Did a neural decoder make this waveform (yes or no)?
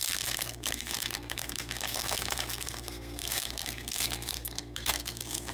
yes